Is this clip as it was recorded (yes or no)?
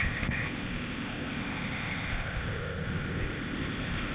no